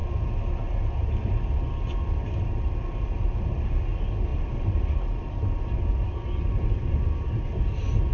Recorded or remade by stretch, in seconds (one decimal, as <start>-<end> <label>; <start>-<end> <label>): 0.0-4.3 recorded; 4.3-6.9 remade; 6.9-8.1 recorded